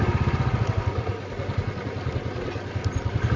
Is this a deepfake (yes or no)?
no